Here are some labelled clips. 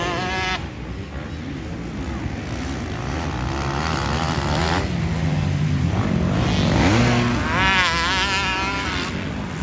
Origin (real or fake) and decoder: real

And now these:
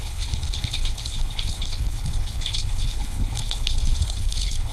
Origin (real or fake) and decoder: fake, codec, HILCodec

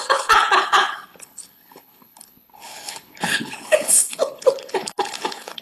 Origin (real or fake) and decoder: fake, codec, HILCodec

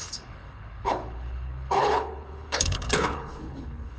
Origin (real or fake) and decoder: fake, codec, HILCodec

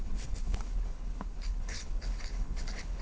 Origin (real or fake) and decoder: fake, codec, HILCodec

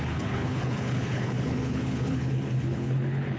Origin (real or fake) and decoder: fake, codec, HILCodec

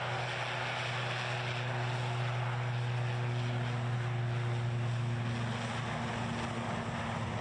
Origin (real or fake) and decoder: real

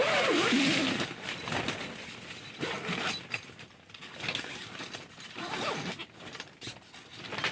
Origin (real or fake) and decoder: real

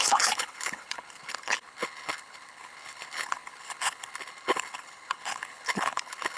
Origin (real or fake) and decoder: fake, codec, HILCodec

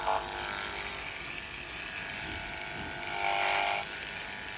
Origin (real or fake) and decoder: real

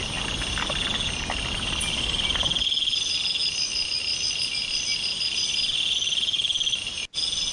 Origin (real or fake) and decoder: real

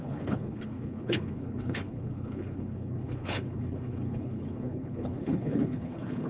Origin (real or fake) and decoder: fake, codec, HILCodec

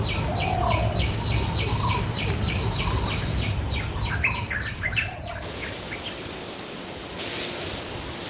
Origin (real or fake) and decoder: real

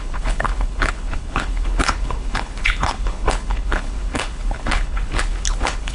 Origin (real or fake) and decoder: fake, codec, HILCodec